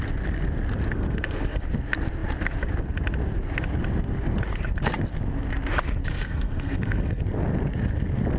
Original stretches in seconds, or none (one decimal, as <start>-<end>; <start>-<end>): 0.0-0.9; 1.6-6.1; 7.2-8.4